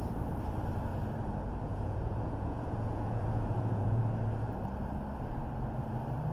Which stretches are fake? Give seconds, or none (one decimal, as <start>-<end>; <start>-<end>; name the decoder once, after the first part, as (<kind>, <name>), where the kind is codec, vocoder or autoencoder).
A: 1.7-4.0 (vocoder, Vocos)